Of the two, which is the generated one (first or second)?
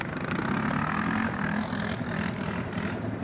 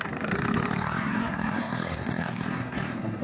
second